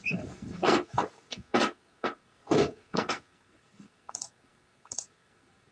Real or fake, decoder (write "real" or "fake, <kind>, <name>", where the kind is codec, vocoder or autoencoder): fake, codec, SNAC